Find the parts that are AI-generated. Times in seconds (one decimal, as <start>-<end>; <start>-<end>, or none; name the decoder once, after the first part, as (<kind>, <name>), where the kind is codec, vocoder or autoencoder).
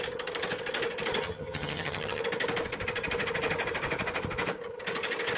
1.2-2.2 (vocoder, HiFi-GAN)